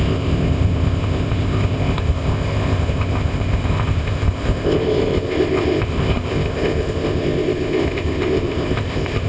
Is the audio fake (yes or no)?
yes